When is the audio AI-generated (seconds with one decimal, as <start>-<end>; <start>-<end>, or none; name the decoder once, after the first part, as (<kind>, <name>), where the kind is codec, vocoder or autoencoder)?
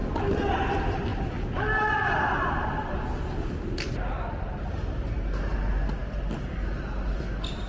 none